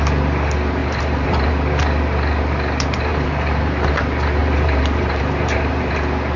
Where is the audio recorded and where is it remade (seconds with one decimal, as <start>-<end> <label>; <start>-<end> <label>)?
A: 0.0-0.8 recorded; 0.8-1.5 remade; 1.5-3.1 recorded; 3.1-3.9 remade; 3.9-4.4 recorded; 4.4-5.9 remade; 5.9-6.4 recorded